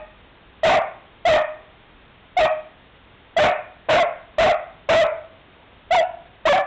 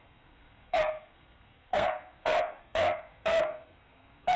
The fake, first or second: second